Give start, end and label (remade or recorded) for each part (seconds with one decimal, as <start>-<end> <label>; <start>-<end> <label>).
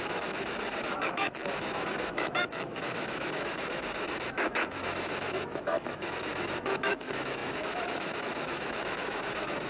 0.0-9.7 remade